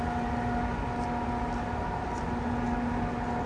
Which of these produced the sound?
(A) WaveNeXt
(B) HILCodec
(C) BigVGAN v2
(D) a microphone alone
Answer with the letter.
D